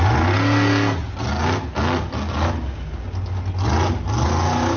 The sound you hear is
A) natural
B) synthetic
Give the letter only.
A